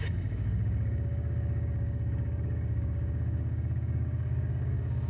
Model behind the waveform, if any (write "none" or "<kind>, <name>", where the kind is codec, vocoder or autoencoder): codec, DAC